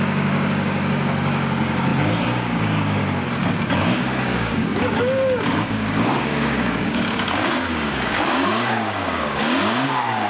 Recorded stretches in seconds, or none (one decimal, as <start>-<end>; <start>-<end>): 3.0-3.7